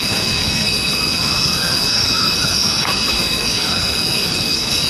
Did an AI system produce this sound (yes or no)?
yes